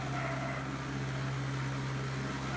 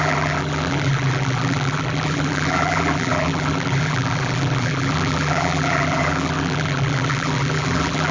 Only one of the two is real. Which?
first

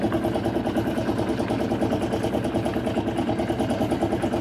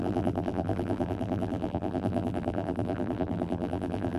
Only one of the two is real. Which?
first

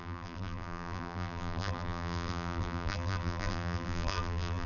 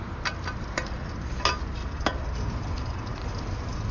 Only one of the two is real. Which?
second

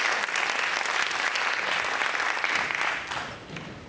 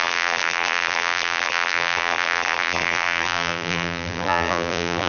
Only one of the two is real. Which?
first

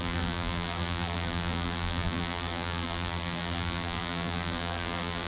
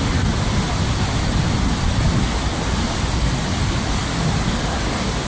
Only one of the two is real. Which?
second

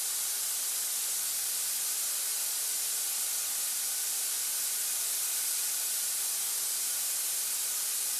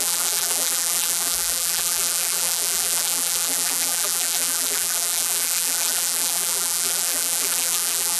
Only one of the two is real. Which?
first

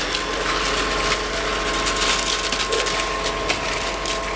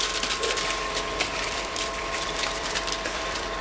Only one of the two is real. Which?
first